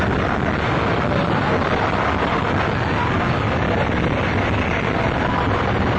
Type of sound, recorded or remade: recorded